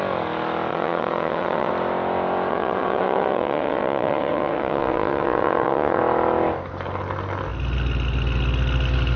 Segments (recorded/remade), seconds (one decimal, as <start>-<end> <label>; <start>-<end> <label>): 0.0-0.7 recorded; 0.7-1.7 remade; 1.7-2.5 recorded; 2.5-6.0 remade; 6.0-9.2 recorded